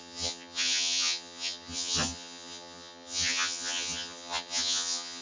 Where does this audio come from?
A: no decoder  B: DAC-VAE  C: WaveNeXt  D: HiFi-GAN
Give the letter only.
D